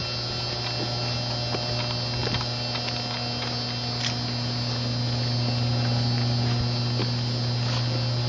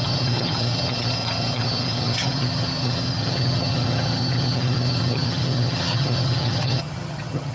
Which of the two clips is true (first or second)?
first